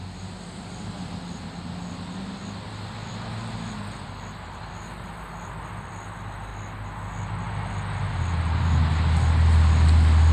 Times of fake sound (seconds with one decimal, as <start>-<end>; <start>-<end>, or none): 3.0-3.7